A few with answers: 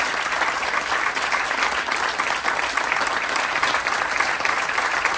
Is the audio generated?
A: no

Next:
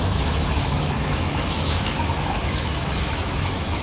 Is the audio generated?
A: yes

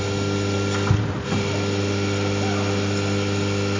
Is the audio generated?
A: no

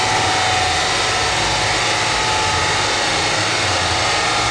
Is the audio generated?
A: no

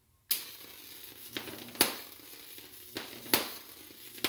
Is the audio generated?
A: no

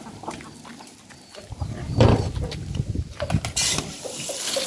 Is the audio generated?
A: no